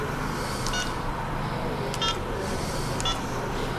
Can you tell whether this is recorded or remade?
recorded